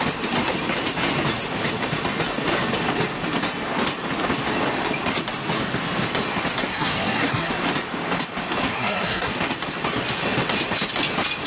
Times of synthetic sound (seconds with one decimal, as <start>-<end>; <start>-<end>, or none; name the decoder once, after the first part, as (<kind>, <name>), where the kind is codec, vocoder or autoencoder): 6.7-7.5 (codec, SNAC); 8.7-9.4